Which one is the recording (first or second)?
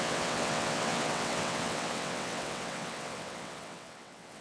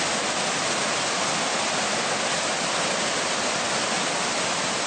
second